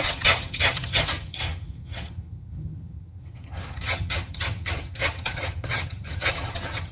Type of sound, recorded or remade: remade